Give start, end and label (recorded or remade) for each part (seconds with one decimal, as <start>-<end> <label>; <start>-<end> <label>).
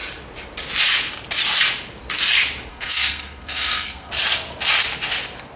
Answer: 0.0-2.7 recorded; 2.7-4.1 remade; 4.1-5.6 recorded